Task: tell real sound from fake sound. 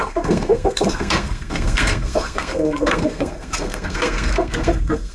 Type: fake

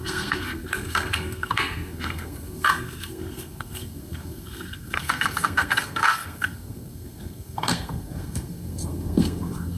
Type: fake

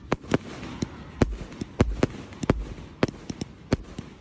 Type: real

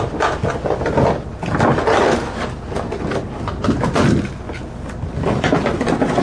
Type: real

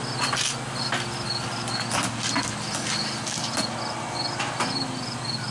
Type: real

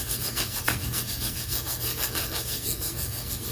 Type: fake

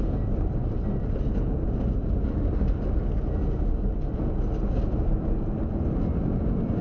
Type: real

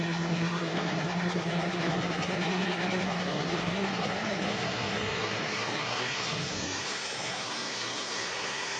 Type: fake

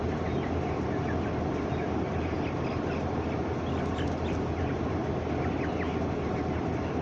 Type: real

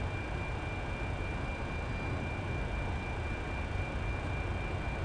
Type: real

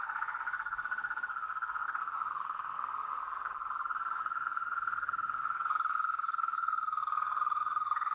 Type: fake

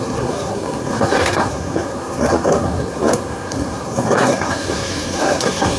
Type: fake